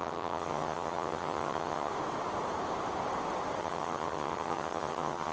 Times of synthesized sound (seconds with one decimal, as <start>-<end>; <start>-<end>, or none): 0.0-1.9; 3.6-5.3